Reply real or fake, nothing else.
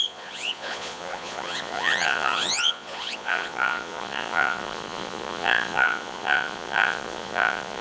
fake